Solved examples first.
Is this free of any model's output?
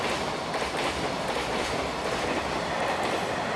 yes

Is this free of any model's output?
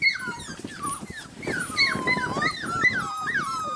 yes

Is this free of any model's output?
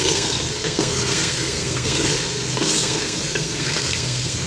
no